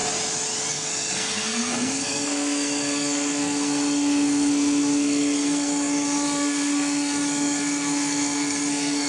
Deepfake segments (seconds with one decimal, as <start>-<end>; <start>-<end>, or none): 0.7-9.1